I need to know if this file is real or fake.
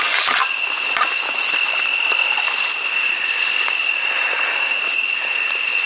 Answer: real